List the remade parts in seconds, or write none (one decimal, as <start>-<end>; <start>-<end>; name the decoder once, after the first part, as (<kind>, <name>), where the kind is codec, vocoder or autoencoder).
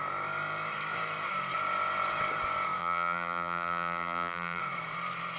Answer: 2.8-4.6 (vocoder, BigVGAN v2)